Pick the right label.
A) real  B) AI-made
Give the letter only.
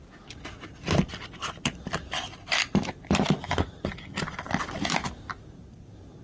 A